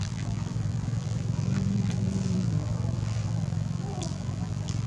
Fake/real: fake